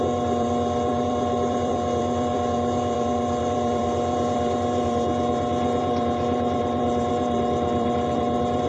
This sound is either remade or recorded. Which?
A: remade